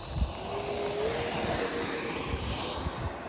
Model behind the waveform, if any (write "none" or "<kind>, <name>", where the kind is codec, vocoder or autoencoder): none